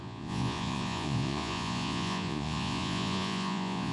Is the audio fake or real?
fake